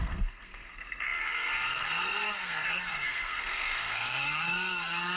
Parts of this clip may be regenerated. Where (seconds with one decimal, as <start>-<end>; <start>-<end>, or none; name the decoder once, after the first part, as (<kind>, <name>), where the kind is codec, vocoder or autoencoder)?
0.0-5.2 (codec, SNAC)